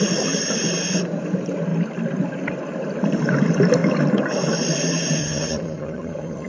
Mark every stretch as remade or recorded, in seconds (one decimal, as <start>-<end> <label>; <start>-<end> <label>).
0.0-5.2 recorded; 5.2-6.5 remade